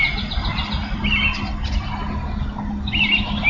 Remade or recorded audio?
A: recorded